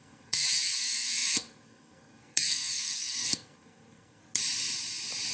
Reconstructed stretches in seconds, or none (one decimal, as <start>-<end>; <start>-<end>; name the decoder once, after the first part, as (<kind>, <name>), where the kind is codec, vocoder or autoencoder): 0.0-4.2 (codec, SNAC)